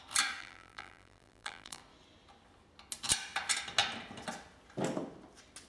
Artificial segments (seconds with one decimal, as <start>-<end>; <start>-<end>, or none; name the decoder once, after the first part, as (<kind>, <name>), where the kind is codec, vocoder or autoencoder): 0.4-1.8 (vocoder, BigVGAN v2)